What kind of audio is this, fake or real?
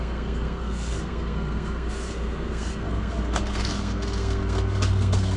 fake